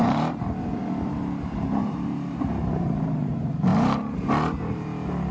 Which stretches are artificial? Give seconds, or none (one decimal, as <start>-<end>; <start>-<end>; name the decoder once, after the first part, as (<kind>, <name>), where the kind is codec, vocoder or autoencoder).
0.0-0.8 (vocoder, BigVGAN v2); 1.8-5.3